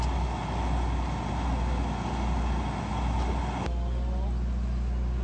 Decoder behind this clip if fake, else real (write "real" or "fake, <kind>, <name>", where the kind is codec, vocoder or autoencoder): real